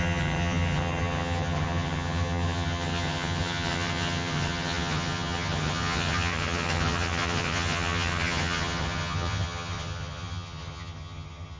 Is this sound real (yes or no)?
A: no